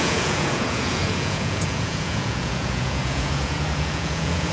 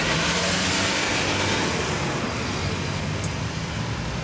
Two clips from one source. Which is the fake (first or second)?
first